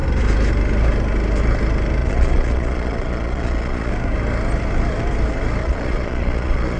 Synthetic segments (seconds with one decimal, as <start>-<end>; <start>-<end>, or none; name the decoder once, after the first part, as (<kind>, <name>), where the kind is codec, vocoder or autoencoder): 2.0-3.9 (vocoder, Vocos); 5.6-6.8